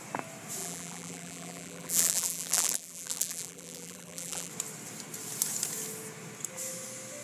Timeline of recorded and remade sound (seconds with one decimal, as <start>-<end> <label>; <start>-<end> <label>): 0.0-0.6 recorded; 0.6-4.5 remade; 4.5-7.2 recorded